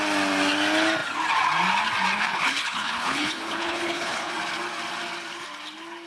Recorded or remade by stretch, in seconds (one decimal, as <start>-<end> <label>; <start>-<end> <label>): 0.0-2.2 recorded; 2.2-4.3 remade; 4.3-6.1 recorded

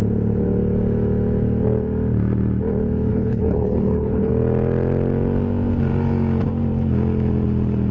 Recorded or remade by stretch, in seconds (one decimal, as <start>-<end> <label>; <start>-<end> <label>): 0.0-3.1 recorded; 3.1-4.3 remade; 4.3-7.9 recorded

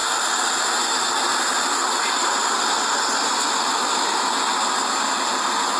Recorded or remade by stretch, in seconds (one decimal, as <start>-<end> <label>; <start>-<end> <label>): 0.0-5.8 recorded

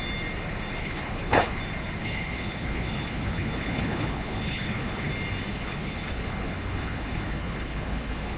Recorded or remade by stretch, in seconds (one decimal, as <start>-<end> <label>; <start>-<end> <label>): 0.0-0.8 recorded; 0.8-1.6 remade; 1.6-2.0 recorded; 2.0-5.1 remade; 5.1-5.5 recorded; 5.5-8.4 remade

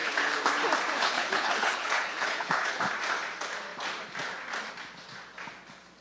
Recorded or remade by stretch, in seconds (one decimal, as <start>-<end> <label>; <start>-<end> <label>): 0.0-0.5 remade; 0.5-1.0 recorded; 1.0-2.8 remade; 2.8-6.0 recorded

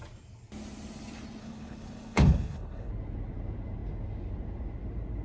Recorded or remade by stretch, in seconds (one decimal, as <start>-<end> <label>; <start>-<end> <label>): 0.0-1.4 recorded; 1.4-2.9 remade; 2.9-5.2 recorded